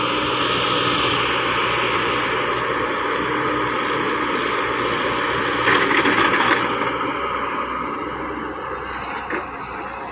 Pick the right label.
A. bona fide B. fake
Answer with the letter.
A